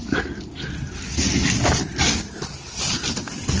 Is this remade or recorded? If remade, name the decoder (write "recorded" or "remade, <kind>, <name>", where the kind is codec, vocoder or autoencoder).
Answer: recorded